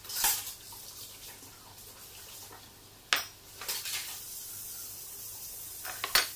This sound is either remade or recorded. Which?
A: recorded